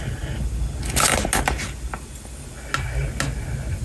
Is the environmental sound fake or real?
real